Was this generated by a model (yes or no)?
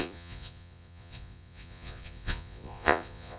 yes